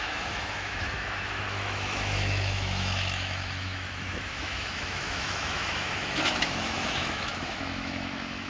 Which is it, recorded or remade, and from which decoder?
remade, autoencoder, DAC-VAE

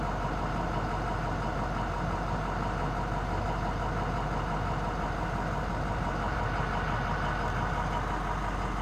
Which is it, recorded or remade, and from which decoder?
recorded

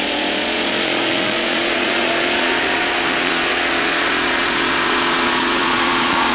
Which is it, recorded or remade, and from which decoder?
remade, vocoder, Vocos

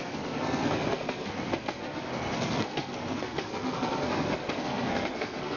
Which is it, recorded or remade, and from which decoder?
remade, codec, SNAC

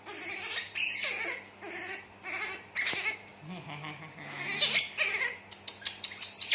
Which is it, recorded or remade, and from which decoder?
recorded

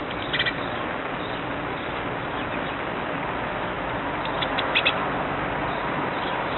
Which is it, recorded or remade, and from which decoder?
recorded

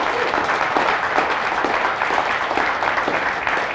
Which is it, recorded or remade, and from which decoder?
recorded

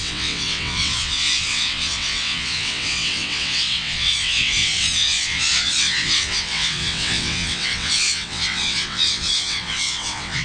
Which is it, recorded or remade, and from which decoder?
remade, vocoder, WaveNeXt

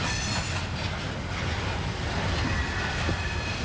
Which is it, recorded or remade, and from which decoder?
recorded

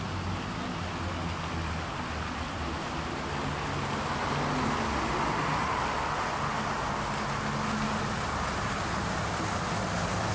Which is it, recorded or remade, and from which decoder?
recorded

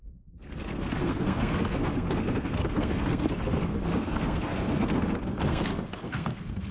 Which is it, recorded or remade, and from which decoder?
remade, codec, SNAC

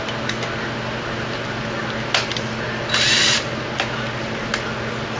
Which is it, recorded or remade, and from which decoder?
recorded